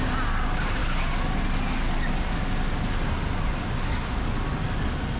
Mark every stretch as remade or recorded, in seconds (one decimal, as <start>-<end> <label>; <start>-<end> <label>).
0.0-5.2 recorded